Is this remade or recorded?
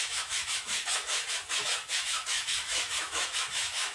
remade